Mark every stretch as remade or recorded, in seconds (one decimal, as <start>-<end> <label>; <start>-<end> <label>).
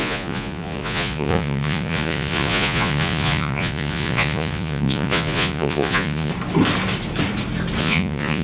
0.0-6.3 remade; 6.3-7.8 recorded; 7.8-8.4 remade